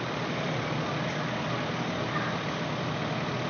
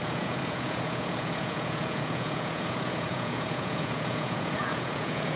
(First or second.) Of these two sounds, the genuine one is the first